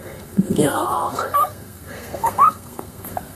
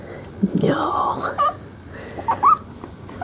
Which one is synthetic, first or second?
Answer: first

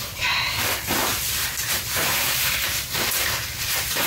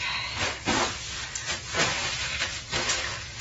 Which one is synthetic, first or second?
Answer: first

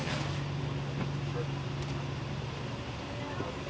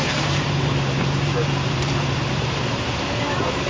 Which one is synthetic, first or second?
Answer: second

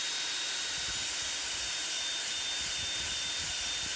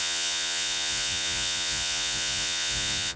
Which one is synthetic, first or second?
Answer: second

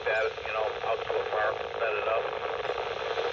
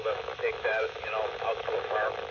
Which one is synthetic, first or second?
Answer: second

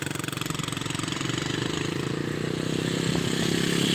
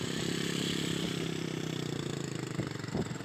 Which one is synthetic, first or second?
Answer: second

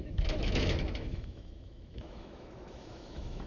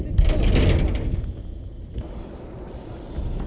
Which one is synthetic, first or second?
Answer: first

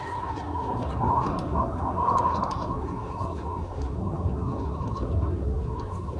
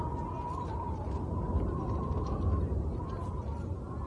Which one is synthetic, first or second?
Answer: first